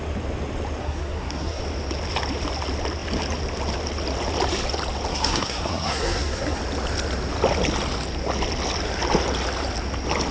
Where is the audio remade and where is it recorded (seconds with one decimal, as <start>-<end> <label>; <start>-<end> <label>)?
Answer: 0.0-0.8 recorded; 0.8-1.6 remade; 1.6-5.1 recorded; 5.1-6.6 remade; 6.6-10.3 recorded